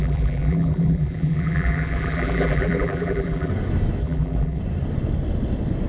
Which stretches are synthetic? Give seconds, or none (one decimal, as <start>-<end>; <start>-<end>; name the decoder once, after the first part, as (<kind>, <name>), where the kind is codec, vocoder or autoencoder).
0.0-3.5 (vocoder, BigVGAN v2); 4.0-4.6